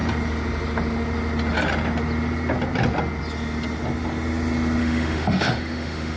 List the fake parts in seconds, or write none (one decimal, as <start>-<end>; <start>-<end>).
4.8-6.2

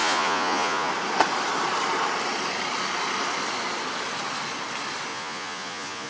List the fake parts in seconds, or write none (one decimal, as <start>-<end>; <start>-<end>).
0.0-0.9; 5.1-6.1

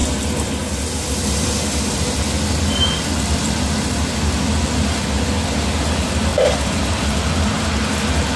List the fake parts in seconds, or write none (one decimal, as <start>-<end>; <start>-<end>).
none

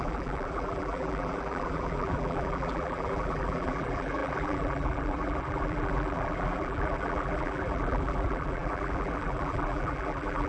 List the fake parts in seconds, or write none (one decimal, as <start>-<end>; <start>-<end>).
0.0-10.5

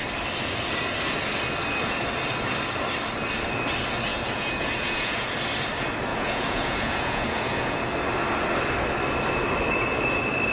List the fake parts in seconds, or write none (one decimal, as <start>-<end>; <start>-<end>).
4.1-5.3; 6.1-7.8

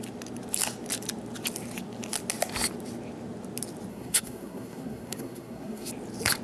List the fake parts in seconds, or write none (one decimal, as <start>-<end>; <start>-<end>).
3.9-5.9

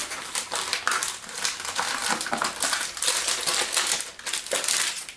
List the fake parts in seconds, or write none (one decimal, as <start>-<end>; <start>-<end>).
0.0-0.8

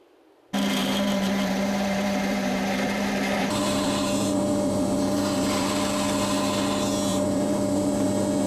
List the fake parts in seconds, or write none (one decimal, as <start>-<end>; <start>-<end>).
0.8-5.7; 7.1-8.1